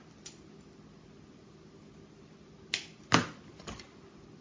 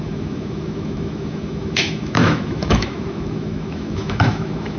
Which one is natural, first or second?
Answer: first